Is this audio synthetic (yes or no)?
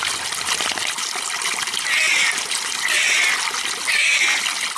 no